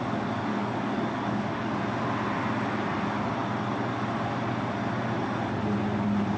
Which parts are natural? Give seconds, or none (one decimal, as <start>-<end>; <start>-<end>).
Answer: 0.0-0.5; 1.8-6.4